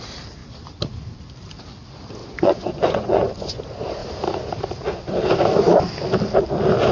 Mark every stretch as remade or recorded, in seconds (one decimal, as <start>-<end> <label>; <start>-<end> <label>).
0.0-2.2 recorded; 2.2-3.6 remade; 3.6-6.9 recorded